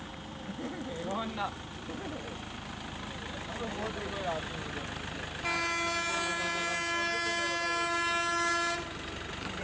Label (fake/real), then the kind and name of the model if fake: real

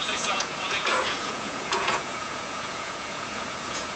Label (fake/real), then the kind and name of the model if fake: fake, vocoder, Vocos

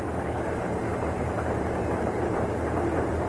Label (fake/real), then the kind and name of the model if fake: fake, vocoder, BigVGAN v2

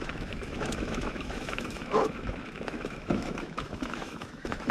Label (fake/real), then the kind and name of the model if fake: fake, autoencoder, DAC-VAE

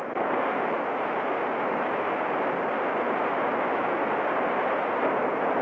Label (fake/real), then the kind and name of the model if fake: real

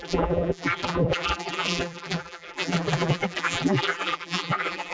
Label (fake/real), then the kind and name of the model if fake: fake, vocoder, BigVGAN v2